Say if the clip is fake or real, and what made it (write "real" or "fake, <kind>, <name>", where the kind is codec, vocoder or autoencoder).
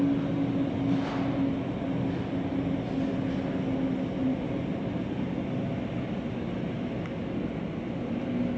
real